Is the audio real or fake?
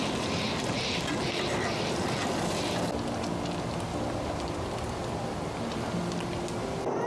real